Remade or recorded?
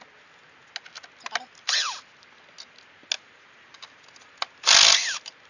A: recorded